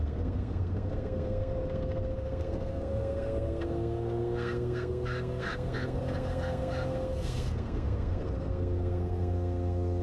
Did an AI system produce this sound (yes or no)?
yes